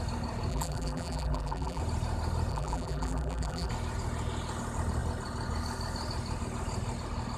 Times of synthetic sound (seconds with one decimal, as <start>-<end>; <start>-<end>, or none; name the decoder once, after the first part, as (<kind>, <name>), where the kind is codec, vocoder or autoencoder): 0.5-1.8 (vocoder, BigVGAN v2); 2.5-3.7